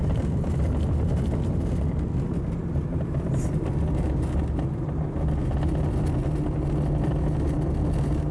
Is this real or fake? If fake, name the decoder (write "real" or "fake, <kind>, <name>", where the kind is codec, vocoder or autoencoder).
real